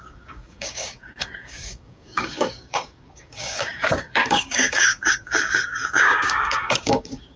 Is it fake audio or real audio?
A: fake